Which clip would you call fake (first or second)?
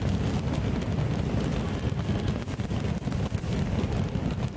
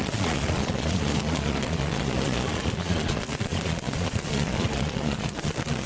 second